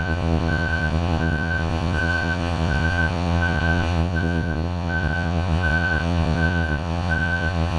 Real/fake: fake